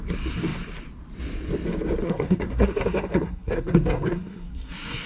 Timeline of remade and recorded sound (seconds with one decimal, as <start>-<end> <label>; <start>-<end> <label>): 0.0-2.0 recorded; 2.0-5.1 remade